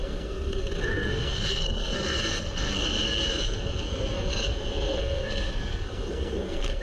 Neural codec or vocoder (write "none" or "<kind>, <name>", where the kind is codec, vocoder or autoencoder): codec, SNAC